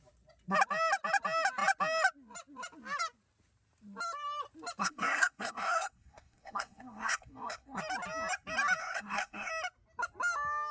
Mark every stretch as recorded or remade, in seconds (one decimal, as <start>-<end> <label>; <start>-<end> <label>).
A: 0.0-4.8 recorded; 4.8-7.8 remade; 7.8-8.8 recorded; 8.8-9.5 remade; 9.5-10.7 recorded